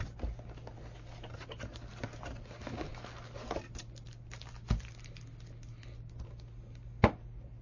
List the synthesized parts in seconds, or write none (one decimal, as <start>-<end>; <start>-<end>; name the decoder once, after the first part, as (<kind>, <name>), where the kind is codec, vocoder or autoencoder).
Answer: none